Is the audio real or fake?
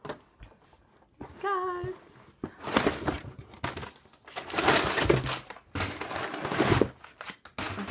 real